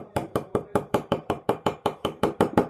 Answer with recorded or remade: remade